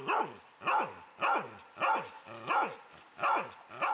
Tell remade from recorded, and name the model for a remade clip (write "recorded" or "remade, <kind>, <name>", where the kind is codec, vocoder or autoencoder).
recorded